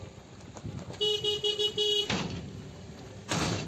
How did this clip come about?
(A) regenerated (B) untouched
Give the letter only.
A